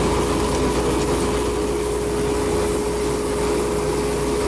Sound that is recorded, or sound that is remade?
recorded